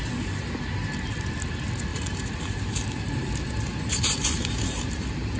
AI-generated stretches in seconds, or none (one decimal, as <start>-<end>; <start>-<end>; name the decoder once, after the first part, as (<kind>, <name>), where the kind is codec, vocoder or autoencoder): 1.9-3.3 (vocoder, BigVGAN v2); 3.9-5.0